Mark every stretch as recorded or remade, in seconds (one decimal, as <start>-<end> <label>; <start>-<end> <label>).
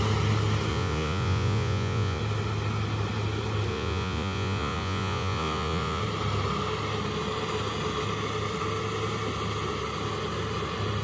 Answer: 0.0-0.7 recorded; 0.7-2.2 remade; 2.2-3.7 recorded; 3.7-6.0 remade; 6.0-11.0 recorded